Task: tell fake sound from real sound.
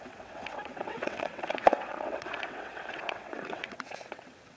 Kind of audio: fake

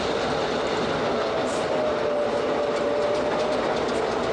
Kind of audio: real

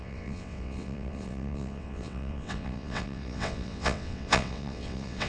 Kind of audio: fake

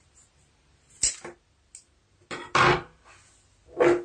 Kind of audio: real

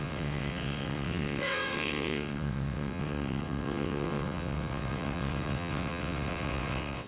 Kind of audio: fake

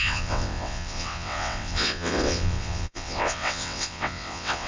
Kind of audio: fake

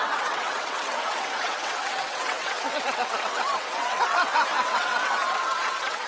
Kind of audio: fake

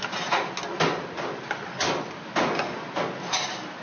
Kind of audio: real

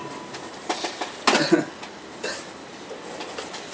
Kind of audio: real